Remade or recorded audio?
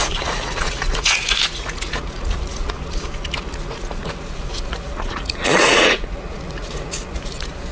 remade